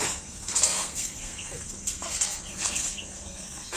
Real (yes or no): no